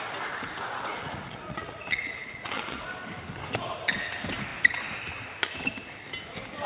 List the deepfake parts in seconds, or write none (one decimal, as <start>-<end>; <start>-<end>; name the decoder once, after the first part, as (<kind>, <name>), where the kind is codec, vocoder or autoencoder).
0.9-2.8 (vocoder, Vocos)

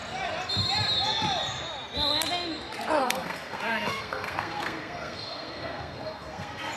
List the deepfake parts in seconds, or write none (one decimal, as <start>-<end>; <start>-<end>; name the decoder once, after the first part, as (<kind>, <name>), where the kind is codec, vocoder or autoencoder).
3.0-6.8 (codec, SNAC)

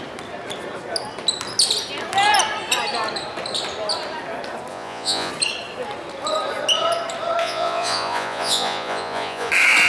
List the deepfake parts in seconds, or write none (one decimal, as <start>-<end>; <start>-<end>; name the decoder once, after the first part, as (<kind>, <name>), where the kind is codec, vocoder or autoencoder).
4.7-5.3 (vocoder, Vocos); 7.4-9.5

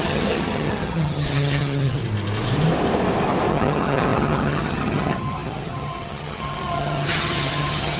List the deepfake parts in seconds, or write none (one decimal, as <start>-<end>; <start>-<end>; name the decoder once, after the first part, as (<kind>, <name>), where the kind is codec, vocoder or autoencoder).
0.0-2.0 (vocoder, HiFi-GAN); 3.5-8.0

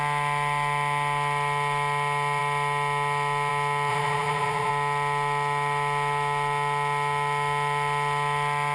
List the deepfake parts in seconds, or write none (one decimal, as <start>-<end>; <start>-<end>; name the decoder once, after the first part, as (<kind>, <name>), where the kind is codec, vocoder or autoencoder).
3.9-4.7 (vocoder, Vocos)

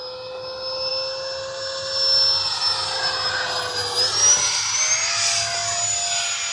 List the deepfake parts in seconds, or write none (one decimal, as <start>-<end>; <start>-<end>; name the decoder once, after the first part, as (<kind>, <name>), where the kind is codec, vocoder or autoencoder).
none

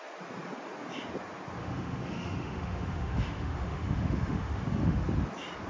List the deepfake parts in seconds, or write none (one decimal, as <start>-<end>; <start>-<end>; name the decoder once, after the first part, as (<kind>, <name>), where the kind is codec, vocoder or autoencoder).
1.6-5.0 (autoencoder, DAC-VAE)